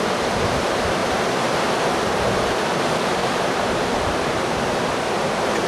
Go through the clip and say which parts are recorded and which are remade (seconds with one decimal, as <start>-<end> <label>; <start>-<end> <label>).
0.0-1.0 recorded; 1.0-1.7 remade; 1.7-3.2 recorded; 3.2-3.7 remade; 3.7-5.7 recorded